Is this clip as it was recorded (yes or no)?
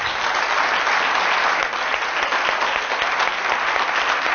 yes